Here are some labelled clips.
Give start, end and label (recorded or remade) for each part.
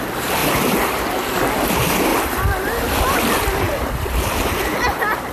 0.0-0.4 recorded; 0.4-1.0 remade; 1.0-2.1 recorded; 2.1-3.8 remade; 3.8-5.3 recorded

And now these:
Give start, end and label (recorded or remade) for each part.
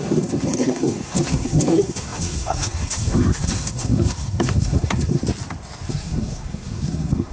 0.0-5.2 remade; 5.2-5.9 recorded; 5.9-7.3 remade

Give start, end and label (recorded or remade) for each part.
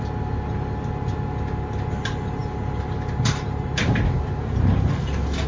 0.0-5.5 recorded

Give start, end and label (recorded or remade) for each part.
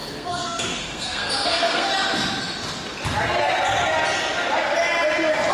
0.0-1.9 remade; 1.9-5.5 recorded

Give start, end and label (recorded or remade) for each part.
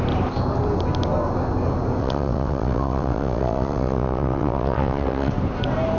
0.0-2.0 recorded; 2.0-5.3 remade; 5.3-6.0 recorded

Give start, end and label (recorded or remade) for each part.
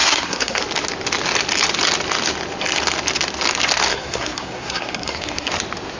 0.0-0.6 remade; 0.6-3.9 recorded; 3.9-5.5 remade; 5.5-6.0 recorded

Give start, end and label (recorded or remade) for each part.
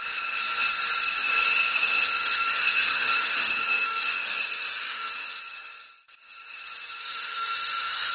0.0-1.7 recorded; 1.7-5.4 remade; 5.4-7.0 recorded; 7.0-8.1 remade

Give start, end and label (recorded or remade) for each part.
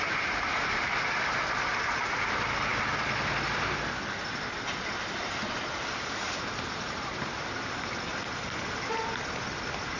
0.0-10.0 recorded